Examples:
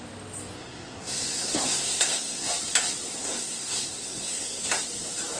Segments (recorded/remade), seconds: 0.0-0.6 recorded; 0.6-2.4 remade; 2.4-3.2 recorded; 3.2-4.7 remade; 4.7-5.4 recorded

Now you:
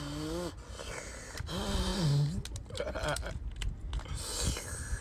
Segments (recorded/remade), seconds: 0.0-5.0 recorded

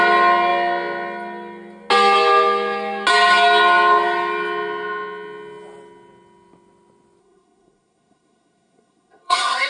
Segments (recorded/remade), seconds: 0.0-7.2 recorded; 7.2-9.7 remade

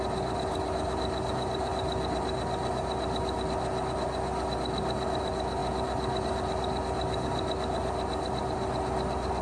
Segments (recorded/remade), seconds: 0.0-9.4 recorded

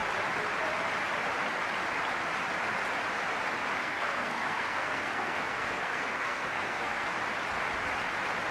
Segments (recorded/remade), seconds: 0.0-3.8 recorded; 3.8-7.2 remade; 7.2-8.5 recorded

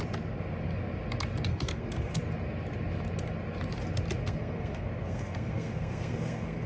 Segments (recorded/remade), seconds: 0.0-1.5 recorded; 1.5-2.2 remade; 2.2-4.2 recorded; 4.2-6.7 remade

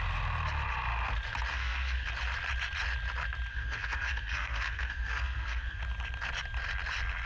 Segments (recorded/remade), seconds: 0.0-1.5 recorded; 1.5-2.1 remade; 2.1-3.5 recorded; 3.5-5.8 remade; 5.8-7.3 recorded

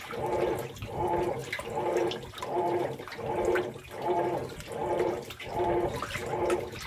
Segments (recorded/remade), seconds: 0.0-6.9 recorded